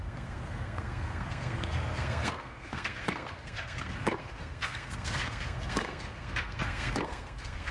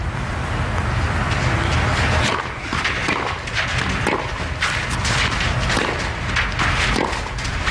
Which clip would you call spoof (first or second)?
first